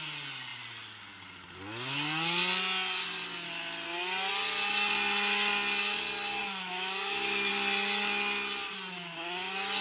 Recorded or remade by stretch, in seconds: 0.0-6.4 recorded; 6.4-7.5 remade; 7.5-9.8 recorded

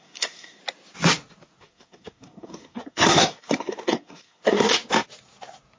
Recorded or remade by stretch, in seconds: 0.0-0.6 remade; 0.6-1.6 recorded; 1.6-4.8 remade; 4.8-5.8 recorded

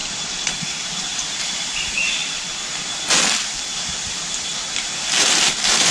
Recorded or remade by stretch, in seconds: 0.0-2.2 remade; 2.2-3.4 recorded; 3.4-4.5 remade; 4.5-5.4 recorded; 5.4-5.9 remade

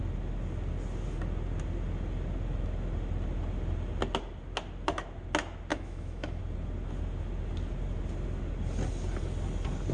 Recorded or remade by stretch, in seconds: 0.0-5.7 recorded; 5.7-6.4 remade; 6.4-9.9 recorded

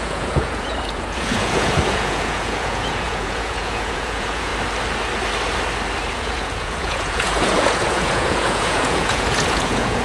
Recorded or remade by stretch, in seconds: 0.0-4.5 remade; 4.5-6.1 recorded; 6.1-10.0 remade

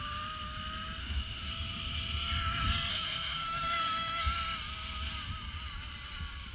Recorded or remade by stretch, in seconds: 0.0-1.0 recorded; 1.0-1.5 remade; 1.5-2.9 recorded; 2.9-4.2 remade; 4.2-6.5 recorded

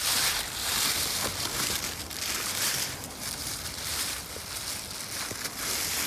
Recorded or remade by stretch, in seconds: 0.0-1.3 recorded; 1.3-4.0 remade; 4.0-6.1 recorded

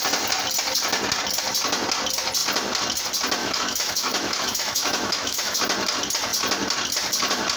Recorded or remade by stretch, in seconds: 0.0-3.4 recorded; 3.4-5.6 remade; 5.6-7.6 recorded